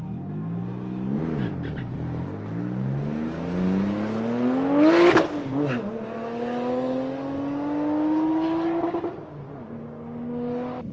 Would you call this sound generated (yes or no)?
no